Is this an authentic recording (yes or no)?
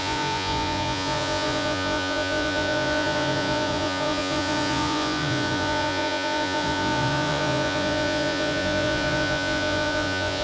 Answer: no